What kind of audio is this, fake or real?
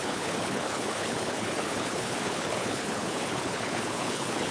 fake